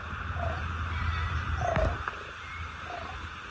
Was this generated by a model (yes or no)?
no